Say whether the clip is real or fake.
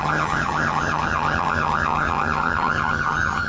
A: fake